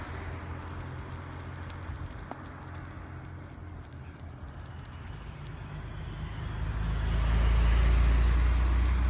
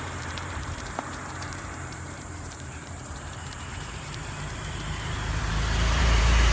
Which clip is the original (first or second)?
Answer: first